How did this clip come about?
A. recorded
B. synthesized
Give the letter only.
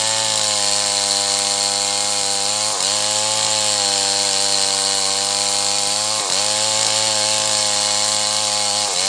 A